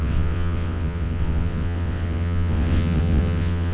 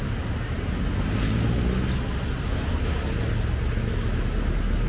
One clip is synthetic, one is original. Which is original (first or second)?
second